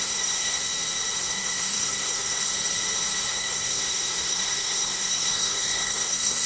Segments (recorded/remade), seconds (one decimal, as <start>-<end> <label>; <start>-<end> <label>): 0.0-0.6 remade; 0.6-1.2 recorded; 1.2-2.5 remade; 2.5-3.3 recorded; 3.3-6.5 remade